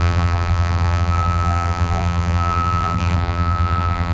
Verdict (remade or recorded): remade